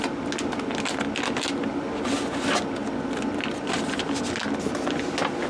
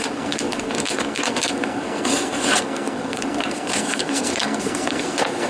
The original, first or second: first